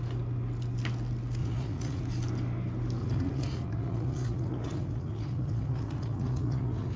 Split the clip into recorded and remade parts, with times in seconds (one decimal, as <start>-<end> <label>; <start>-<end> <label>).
0.0-1.4 recorded; 1.4-2.0 remade; 2.0-3.0 recorded; 3.0-7.0 remade